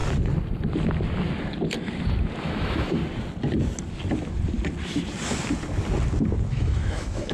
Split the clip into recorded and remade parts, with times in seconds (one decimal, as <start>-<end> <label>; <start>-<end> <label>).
0.0-2.4 recorded; 2.4-3.0 remade; 3.0-6.5 recorded; 6.5-7.3 remade